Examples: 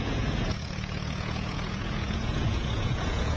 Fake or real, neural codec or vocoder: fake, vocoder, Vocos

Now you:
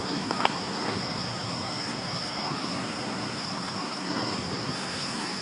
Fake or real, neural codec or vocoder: fake, codec, SNAC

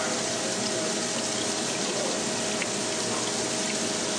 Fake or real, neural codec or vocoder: real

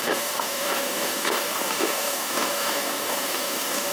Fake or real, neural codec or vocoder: fake, codec, DAC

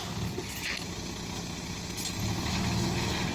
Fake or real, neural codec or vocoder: real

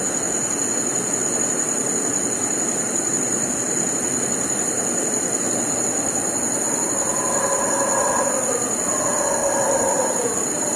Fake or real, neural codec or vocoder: real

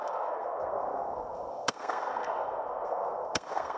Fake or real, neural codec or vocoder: fake, codec, SNAC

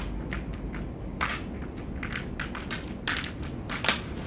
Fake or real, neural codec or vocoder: real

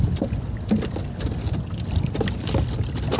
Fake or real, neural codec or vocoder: real